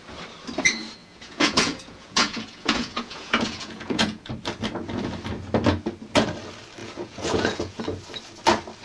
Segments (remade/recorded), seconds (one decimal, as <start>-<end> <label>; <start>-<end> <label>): 0.0-1.0 recorded; 1.0-4.3 remade; 4.3-6.8 recorded; 6.8-7.8 remade; 7.8-8.8 recorded